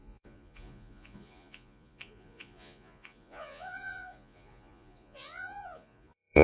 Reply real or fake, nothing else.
fake